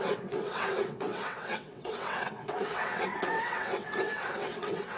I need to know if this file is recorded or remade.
remade